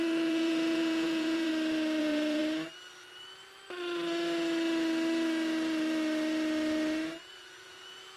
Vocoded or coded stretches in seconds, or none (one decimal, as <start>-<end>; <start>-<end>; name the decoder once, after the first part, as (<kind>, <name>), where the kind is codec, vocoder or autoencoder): 0.0-1.5 (vocoder, Vocos); 2.0-2.4; 7.3-8.2